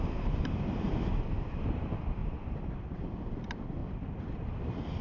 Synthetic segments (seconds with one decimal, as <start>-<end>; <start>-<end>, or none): 0.0-2.2; 3.3-3.8; 4.3-5.0